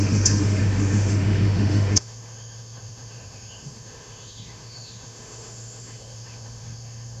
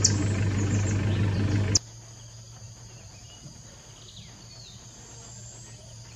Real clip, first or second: second